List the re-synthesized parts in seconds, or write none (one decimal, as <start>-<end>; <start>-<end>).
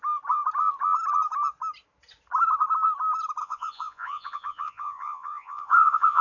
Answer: 3.4-6.2